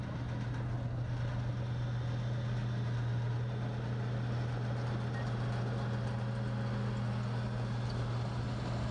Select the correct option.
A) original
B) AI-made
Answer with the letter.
A